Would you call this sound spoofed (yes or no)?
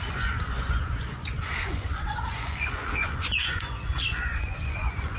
yes